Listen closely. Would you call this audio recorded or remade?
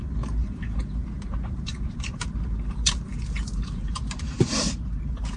remade